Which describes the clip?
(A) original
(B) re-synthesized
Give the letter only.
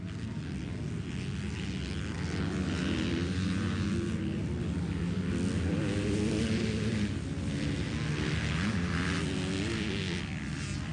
A